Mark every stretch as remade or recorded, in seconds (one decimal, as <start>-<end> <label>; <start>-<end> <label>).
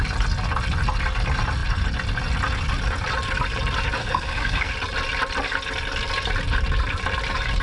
0.0-4.0 recorded; 4.0-4.7 remade; 4.7-7.6 recorded